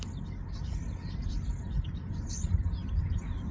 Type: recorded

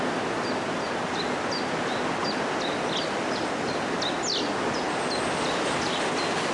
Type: recorded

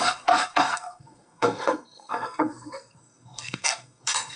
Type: remade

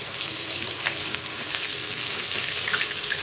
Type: remade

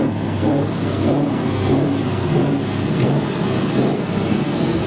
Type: remade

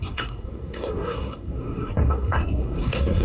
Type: remade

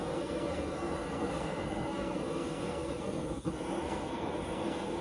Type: remade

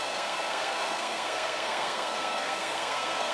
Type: remade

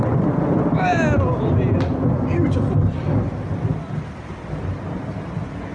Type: recorded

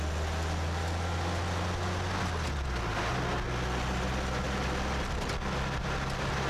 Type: recorded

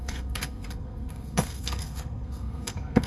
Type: remade